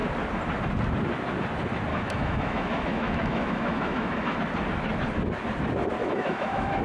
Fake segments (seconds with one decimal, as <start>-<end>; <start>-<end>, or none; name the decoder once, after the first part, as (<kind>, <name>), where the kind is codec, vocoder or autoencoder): 1.9-4.4 (autoencoder, DAC-VAE); 6.0-6.8